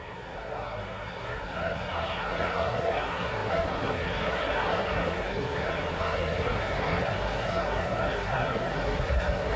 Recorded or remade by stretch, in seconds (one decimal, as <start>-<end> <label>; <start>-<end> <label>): 0.0-9.6 remade